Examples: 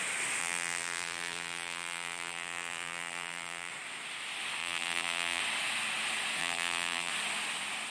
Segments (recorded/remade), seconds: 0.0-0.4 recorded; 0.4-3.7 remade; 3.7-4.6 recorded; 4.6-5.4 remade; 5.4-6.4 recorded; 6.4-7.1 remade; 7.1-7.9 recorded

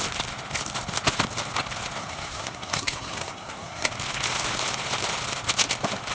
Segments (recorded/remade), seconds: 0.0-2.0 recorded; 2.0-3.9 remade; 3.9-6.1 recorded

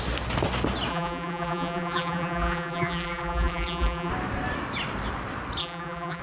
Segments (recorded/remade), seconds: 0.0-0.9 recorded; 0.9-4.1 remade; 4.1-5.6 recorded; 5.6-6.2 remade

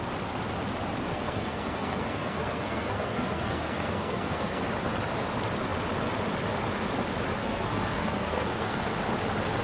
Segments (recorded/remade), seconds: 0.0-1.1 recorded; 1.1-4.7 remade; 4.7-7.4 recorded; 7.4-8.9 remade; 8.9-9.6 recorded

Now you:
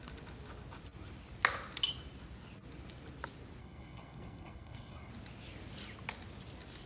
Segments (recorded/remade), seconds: 0.0-3.6 recorded; 3.6-5.1 remade; 5.1-6.9 recorded